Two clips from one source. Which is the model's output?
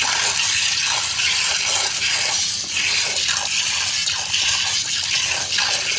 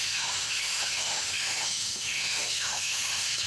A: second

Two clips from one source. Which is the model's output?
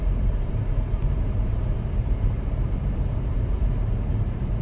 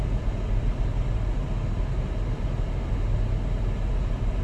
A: first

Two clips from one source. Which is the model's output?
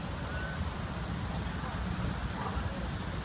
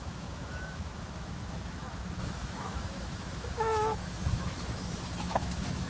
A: second